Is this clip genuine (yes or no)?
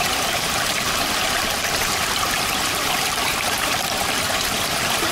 no